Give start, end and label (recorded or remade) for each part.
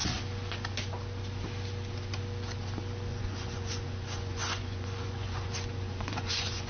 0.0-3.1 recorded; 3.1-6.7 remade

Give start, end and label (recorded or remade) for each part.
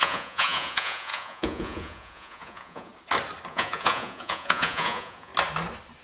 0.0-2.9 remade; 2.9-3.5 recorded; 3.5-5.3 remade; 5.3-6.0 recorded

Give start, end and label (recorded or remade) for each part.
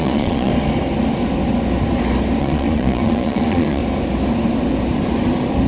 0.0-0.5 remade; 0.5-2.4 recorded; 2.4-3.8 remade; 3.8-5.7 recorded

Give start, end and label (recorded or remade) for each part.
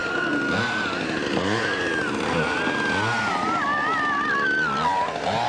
0.0-5.5 recorded